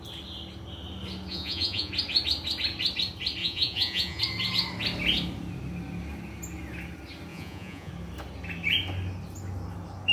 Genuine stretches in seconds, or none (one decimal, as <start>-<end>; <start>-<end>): 0.0-1.3; 1.9-3.4; 4.2-7.3; 7.9-10.1